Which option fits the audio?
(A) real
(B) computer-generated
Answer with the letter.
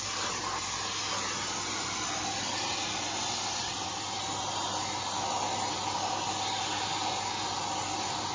A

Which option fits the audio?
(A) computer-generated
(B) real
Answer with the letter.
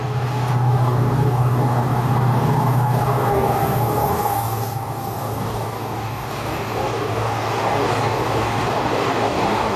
A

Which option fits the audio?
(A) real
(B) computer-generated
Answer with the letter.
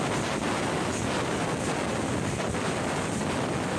A